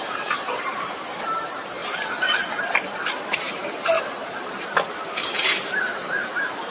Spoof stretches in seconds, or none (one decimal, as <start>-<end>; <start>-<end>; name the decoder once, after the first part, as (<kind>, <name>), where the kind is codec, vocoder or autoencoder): 0.0-1.8 (vocoder, BigVGAN v2); 3.3-6.7